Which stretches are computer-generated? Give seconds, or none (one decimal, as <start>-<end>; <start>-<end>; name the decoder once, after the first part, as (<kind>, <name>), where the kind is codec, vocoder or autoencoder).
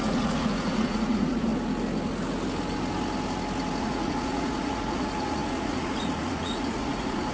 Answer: 0.0-1.5 (vocoder, Vocos); 3.8-7.3